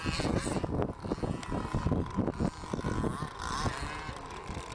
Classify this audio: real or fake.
real